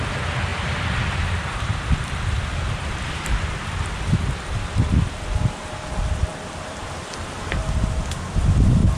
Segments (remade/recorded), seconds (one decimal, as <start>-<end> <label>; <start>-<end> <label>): 0.0-0.5 recorded; 0.5-2.4 remade; 2.4-6.3 recorded; 6.3-7.1 remade; 7.1-7.6 recorded; 7.6-9.0 remade